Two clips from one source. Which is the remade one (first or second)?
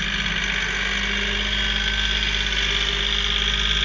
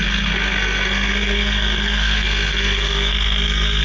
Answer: second